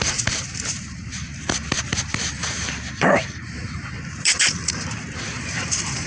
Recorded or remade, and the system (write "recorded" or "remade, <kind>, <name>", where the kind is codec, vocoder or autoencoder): remade, vocoder, BigVGAN v2